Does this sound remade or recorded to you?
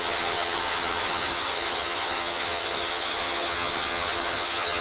remade